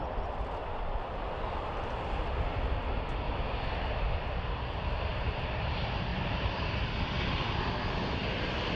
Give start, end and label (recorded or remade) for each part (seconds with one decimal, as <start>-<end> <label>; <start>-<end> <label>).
0.0-0.6 recorded; 0.6-2.1 remade; 2.1-6.1 recorded; 6.1-6.7 remade; 6.7-8.8 recorded